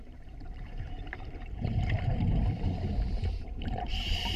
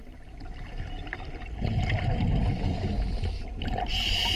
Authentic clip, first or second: second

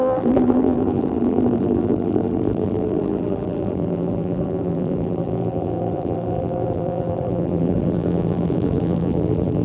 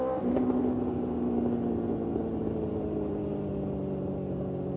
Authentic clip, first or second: second